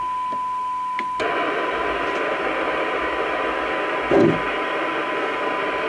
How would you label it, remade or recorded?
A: recorded